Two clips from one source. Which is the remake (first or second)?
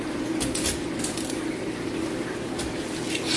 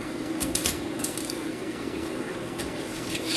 second